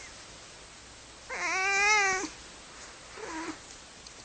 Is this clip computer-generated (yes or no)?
no